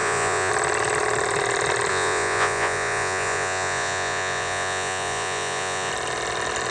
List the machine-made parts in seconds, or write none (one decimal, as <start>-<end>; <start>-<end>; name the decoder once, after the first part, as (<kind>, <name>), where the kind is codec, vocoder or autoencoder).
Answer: 0.0-0.5 (vocoder, Vocos); 1.9-5.9